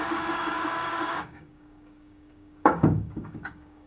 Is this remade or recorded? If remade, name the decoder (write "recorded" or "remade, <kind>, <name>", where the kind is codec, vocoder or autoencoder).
remade, codec, DAC